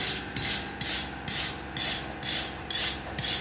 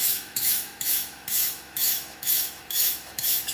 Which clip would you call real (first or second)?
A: first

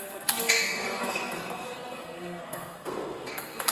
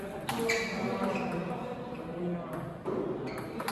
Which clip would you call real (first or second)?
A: second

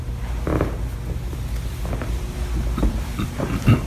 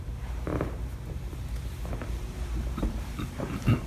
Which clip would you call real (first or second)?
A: first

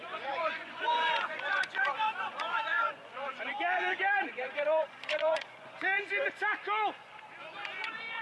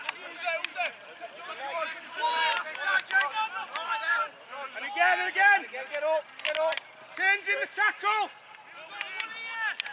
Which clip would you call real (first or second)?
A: second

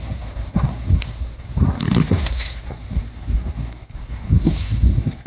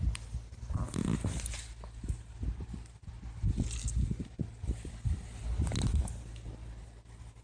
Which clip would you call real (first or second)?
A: second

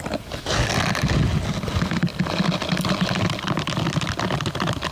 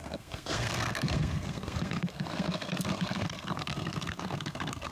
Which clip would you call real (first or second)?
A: first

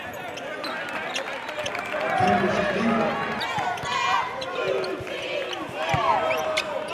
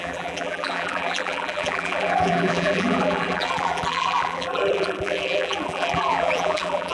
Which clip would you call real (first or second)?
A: first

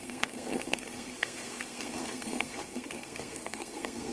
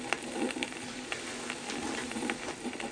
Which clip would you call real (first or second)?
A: second